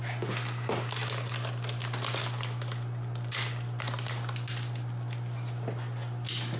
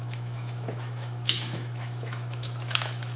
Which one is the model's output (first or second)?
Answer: second